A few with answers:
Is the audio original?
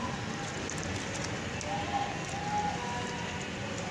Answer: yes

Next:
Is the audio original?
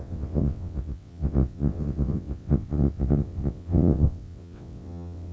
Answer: no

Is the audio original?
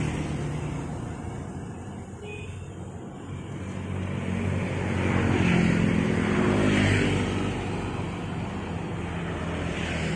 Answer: yes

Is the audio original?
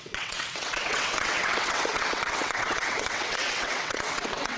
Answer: no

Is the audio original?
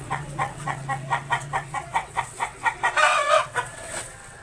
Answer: no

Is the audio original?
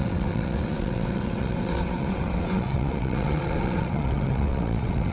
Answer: no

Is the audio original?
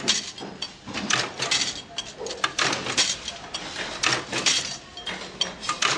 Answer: yes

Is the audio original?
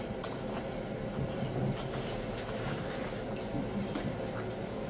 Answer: yes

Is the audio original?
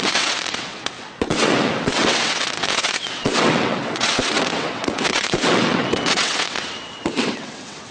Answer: no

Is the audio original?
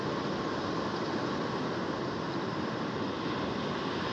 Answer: yes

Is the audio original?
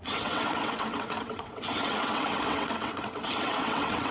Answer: no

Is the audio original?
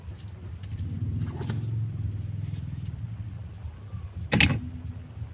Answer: yes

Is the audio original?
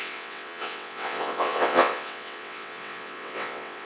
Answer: no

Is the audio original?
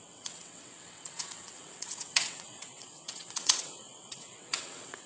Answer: no